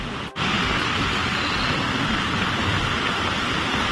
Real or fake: real